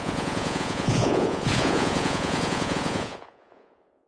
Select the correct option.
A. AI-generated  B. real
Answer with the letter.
A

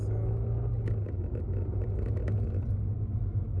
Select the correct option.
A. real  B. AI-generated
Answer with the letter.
A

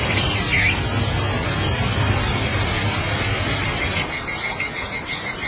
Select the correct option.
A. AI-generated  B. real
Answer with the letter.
B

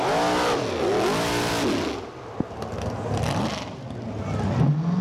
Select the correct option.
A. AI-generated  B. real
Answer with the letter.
B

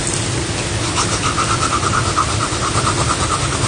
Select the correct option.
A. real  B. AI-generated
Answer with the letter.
A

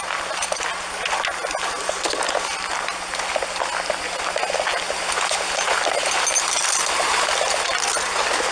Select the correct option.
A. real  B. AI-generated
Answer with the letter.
A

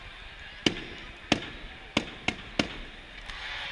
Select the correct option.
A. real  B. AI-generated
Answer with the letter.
A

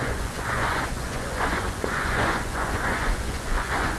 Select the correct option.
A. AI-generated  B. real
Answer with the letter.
A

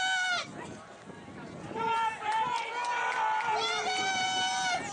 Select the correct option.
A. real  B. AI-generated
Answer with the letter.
A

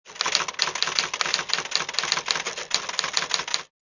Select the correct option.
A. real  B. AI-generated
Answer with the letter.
A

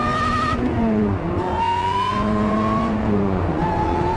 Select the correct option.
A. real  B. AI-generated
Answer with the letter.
B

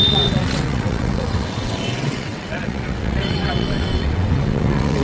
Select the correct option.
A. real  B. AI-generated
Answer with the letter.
B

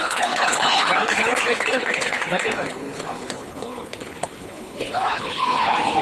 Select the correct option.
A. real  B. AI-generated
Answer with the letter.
B